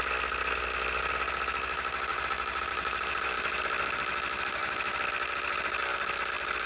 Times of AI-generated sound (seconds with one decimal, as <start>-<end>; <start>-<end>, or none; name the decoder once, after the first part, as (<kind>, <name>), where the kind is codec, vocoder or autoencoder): 2.1-3.6 (vocoder, BigVGAN v2)